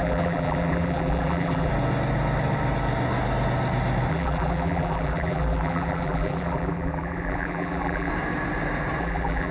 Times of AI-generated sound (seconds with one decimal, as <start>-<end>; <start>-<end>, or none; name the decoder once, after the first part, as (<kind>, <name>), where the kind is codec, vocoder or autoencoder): 0.0-1.7 (vocoder, BigVGAN v2); 4.1-8.1; 9.0-9.5